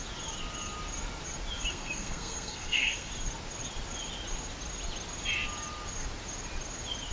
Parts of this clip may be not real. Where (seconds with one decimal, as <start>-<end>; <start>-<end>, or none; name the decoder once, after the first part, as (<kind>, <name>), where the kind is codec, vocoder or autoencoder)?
1.7-3.1 (codec, SNAC)